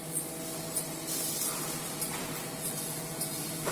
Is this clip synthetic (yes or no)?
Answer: no